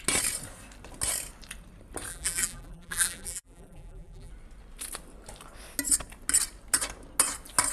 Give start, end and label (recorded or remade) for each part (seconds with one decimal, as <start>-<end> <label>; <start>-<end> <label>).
0.0-2.1 recorded; 2.1-4.3 remade; 4.3-7.7 recorded

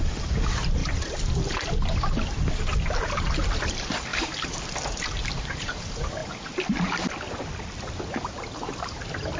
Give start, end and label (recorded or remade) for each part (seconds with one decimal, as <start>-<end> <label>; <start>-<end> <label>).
0.0-9.4 remade

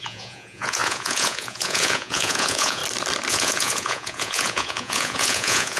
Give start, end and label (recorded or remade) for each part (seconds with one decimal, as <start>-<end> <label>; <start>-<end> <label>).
0.0-2.8 remade; 2.8-3.3 recorded; 3.3-5.8 remade